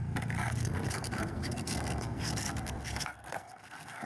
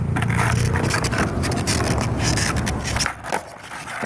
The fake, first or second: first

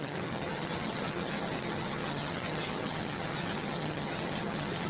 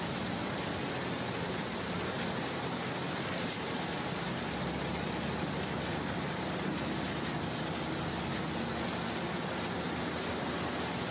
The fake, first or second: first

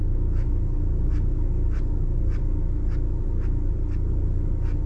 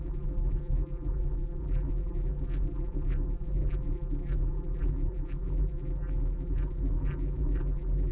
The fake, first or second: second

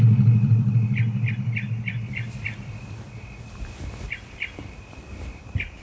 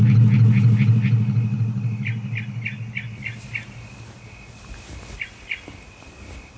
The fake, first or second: first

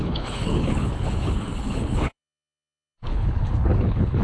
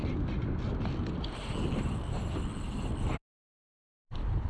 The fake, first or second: first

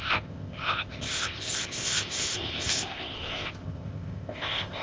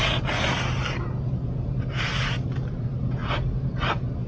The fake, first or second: first